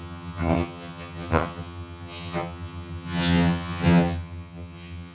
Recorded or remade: remade